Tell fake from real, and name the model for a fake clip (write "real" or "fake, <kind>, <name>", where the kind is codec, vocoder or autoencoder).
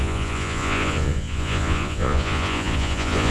fake, vocoder, Vocos